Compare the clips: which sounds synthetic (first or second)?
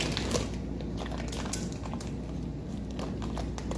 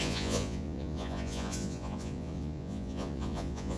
second